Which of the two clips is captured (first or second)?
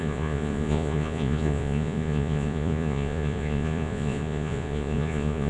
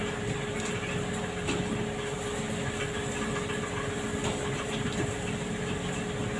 second